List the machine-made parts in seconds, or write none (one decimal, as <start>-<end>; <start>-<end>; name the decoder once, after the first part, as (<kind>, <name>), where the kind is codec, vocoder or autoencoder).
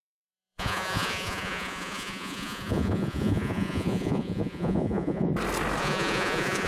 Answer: 0.0-5.3 (vocoder, Vocos); 5.8-6.7